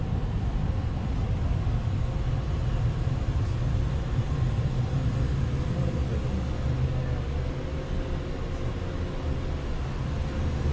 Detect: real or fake real